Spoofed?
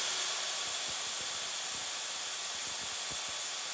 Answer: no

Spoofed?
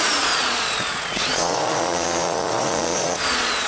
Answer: yes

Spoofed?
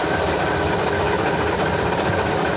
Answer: no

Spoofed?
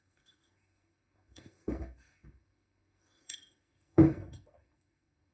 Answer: yes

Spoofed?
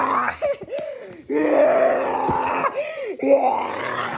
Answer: no